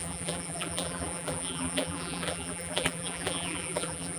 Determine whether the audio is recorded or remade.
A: remade